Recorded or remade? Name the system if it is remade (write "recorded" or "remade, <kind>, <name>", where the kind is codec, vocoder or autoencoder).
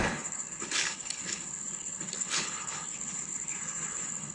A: remade, codec, HILCodec